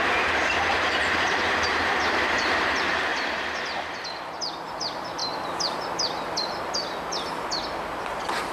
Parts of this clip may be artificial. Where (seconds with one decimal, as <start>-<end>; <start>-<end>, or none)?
0.0-3.1; 4.7-5.2; 8.0-8.5